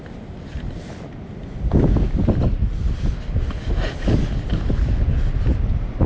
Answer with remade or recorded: recorded